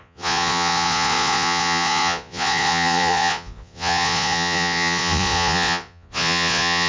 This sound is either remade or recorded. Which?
remade